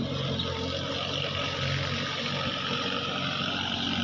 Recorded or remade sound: recorded